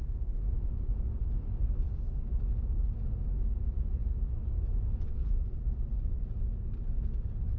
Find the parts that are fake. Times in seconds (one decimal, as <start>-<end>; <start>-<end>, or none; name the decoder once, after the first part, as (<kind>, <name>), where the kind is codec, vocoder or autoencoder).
none